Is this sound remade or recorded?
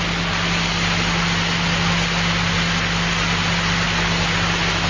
recorded